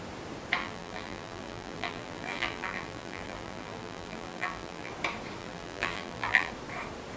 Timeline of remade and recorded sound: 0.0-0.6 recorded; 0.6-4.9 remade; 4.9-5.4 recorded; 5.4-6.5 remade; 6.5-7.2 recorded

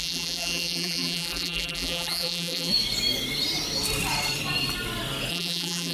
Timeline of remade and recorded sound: 0.0-2.7 remade; 2.7-5.3 recorded; 5.3-5.9 remade

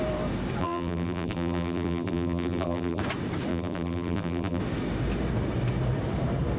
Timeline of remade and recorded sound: 0.0-0.6 recorded; 0.6-3.0 remade; 3.0-3.5 recorded; 3.5-4.6 remade; 4.6-6.6 recorded

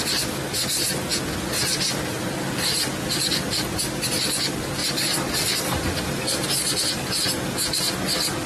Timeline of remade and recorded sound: 0.0-4.8 recorded; 4.8-7.2 remade; 7.2-8.5 recorded